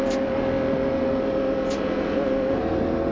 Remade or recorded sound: recorded